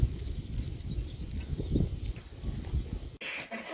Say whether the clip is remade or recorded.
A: recorded